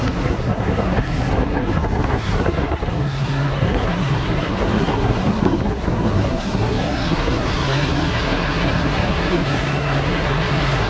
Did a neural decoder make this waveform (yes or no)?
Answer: yes